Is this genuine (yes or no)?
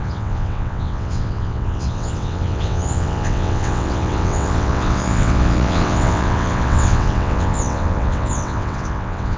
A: no